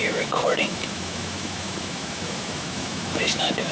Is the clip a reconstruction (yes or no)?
yes